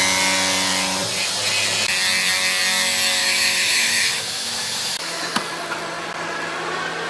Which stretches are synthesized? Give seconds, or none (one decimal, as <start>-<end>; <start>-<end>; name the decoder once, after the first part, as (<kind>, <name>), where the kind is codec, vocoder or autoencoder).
3.2-5.2 (autoencoder, DAC-VAE)